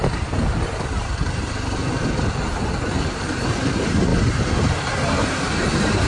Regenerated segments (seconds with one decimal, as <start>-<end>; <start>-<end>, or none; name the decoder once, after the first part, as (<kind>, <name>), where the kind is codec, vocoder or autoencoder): 0.0-4.1 (vocoder, BigVGAN v2); 4.7-6.1